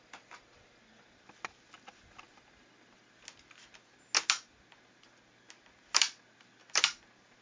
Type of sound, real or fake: real